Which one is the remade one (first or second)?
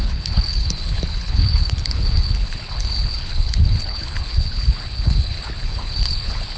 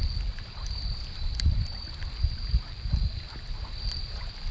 first